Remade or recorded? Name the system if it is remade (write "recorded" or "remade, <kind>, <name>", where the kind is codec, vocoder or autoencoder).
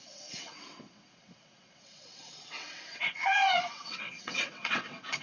remade, vocoder, WaveNeXt